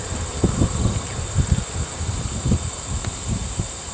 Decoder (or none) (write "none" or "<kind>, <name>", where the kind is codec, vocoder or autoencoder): none